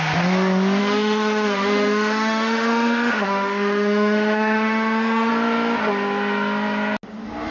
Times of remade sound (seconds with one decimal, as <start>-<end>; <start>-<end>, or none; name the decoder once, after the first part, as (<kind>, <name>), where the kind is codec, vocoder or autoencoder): 0.8-5.3 (autoencoder, DAC-VAE)